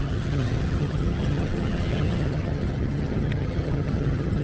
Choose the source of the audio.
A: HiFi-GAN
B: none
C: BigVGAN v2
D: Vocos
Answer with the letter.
A